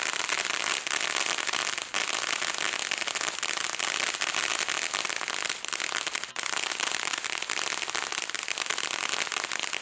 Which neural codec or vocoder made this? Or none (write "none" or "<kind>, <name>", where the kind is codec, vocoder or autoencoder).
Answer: none